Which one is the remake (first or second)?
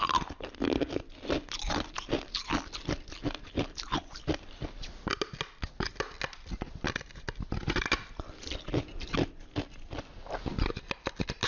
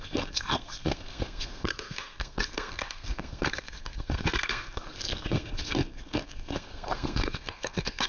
second